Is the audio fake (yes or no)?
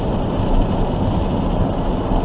no